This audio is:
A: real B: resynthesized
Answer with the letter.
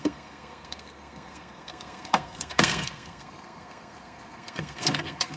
B